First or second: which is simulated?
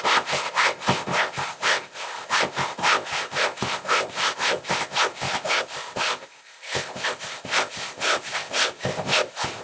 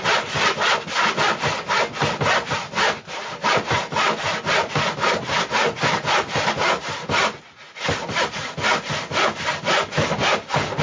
first